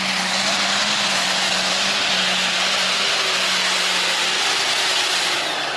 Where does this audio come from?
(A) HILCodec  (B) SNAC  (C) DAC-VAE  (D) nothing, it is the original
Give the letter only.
D